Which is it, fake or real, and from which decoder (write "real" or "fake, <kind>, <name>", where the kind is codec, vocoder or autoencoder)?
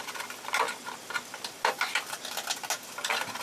real